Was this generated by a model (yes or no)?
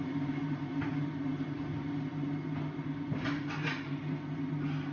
no